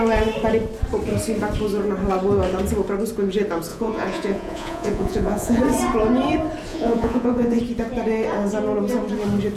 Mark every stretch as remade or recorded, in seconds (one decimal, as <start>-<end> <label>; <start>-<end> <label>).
0.0-3.7 recorded; 3.7-5.6 remade; 5.6-6.7 recorded; 6.7-7.6 remade; 7.6-9.6 recorded